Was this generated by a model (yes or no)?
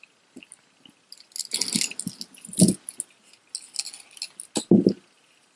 no